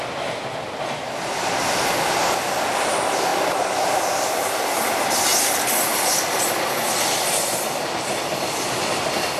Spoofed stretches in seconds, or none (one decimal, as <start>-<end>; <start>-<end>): none